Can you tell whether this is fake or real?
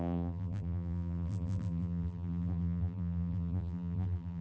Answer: fake